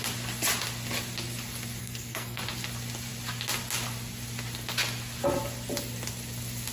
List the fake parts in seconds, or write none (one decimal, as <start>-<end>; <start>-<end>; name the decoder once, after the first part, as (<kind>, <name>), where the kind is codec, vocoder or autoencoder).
1.8-2.4 (codec, SNAC)